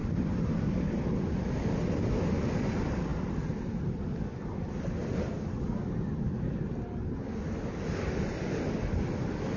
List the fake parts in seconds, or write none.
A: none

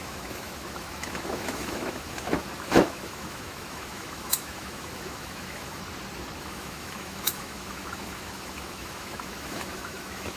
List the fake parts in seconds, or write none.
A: 0.0-5.8 (autoencoder, DAC-VAE); 6.4-10.4

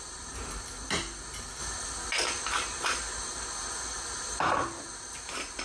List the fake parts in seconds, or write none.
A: none

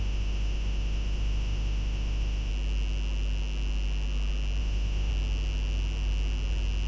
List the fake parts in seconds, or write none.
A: 0.0-2.5 (autoencoder, DAC-VAE); 4.6-5.1

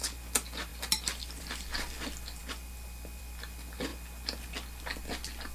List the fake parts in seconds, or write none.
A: none

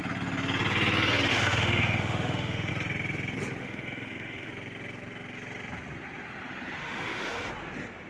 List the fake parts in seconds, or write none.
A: 1.3-2.7 (autoencoder, DAC-VAE); 3.6-4.5; 6.8-7.5

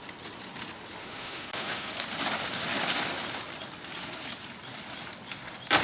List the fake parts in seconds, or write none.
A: 1.0-1.9 (autoencoder, DAC-VAE)